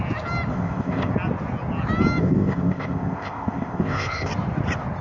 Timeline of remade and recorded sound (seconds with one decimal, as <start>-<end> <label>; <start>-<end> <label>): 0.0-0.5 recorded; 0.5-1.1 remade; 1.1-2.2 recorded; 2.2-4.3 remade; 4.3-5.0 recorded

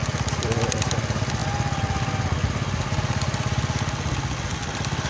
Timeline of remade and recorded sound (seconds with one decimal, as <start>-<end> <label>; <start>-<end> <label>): 0.0-5.1 recorded

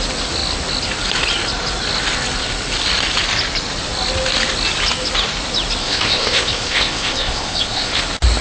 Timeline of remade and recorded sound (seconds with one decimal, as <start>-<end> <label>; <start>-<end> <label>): 0.0-5.8 recorded; 5.8-8.0 remade; 8.0-8.4 recorded

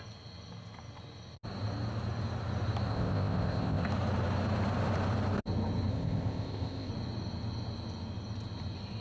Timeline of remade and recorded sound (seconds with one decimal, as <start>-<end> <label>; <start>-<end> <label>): 0.0-2.9 recorded; 2.9-3.9 remade; 3.9-5.9 recorded; 5.9-6.9 remade; 6.9-9.0 recorded

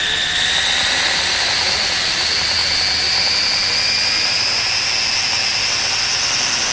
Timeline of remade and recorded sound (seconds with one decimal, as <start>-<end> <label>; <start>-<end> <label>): 0.0-6.7 recorded

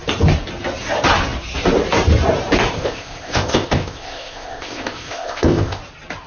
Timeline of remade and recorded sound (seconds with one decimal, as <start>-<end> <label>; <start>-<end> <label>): 0.0-2.7 recorded; 2.7-5.8 remade; 5.8-6.3 recorded

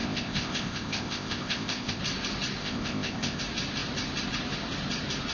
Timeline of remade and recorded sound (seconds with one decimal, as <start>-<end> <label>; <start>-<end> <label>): 0.0-2.0 remade; 2.0-2.6 recorded; 2.6-3.4 remade; 3.4-5.3 recorded

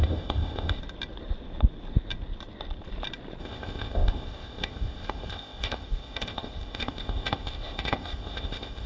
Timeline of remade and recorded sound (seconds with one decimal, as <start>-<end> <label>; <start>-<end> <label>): 0.0-0.8 remade; 0.8-3.4 recorded; 3.4-8.9 remade